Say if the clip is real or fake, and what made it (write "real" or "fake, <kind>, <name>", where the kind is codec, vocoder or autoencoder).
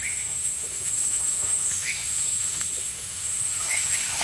fake, autoencoder, DAC-VAE